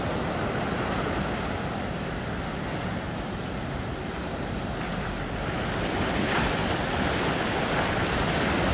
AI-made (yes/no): no